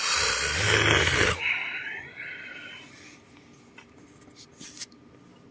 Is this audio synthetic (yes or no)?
no